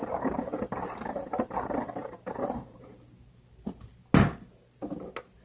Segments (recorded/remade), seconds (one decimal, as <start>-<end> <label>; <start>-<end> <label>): 0.0-2.8 remade; 2.8-5.4 recorded